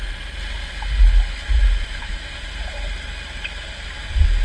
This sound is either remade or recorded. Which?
recorded